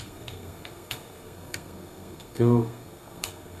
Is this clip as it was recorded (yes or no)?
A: no